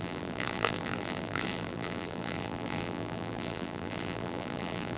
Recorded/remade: remade